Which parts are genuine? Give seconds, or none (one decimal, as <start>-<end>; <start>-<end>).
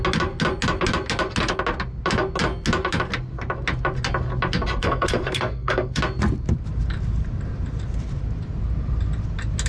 0.0-4.8; 6.0-9.7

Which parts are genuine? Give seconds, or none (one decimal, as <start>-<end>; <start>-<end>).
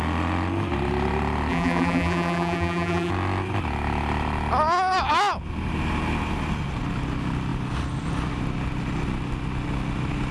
0.0-1.5; 3.1-10.3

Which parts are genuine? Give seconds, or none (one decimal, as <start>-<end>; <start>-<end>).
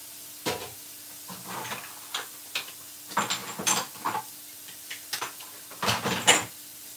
0.0-7.0